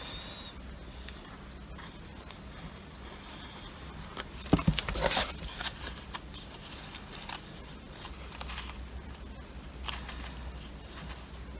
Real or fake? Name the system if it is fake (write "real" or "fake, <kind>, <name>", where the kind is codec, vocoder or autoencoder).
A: real